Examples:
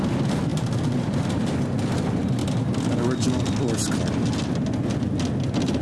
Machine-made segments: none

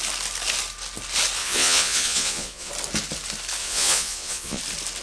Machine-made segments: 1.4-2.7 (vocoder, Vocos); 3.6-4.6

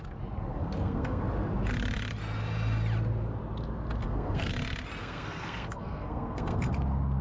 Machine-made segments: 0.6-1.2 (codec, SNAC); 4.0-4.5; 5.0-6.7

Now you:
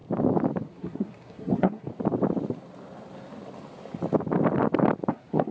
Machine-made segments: 0.7-1.9 (codec, SNAC); 5.1-5.5

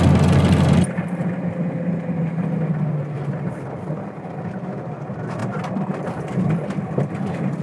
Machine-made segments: none